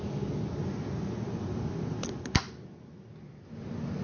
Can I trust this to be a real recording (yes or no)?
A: yes